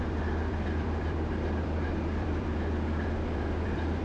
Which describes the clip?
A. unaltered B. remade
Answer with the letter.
B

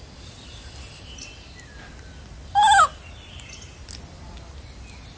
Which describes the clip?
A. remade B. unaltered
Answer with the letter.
B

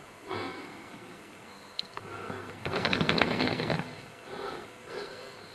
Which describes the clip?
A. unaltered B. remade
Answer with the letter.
B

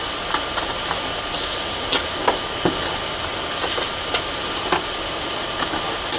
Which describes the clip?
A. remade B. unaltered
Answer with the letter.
B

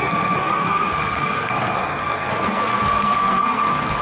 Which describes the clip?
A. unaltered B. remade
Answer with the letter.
B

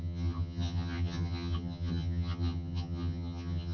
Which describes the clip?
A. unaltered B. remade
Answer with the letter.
B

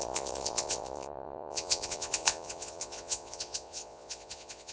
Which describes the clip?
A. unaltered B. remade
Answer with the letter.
B